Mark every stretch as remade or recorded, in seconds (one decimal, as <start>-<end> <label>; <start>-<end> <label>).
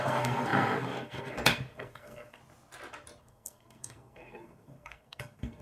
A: 0.0-2.4 remade; 2.4-3.2 recorded; 3.2-5.6 remade